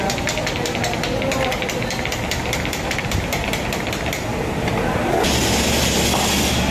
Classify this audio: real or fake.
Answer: real